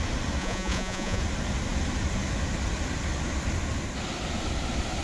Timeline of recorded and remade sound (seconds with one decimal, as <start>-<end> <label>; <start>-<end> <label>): 0.0-0.4 recorded; 0.4-1.2 remade; 1.2-5.0 recorded